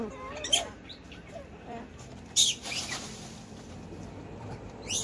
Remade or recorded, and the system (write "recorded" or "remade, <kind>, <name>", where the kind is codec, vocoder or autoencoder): remade, vocoder, BigVGAN v2